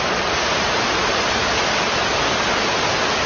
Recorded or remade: recorded